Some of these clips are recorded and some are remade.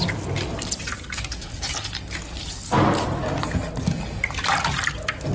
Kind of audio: recorded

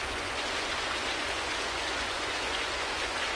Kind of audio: remade